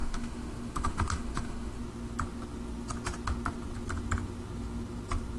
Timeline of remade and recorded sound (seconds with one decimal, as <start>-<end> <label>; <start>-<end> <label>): 0.0-1.8 remade; 1.8-5.4 recorded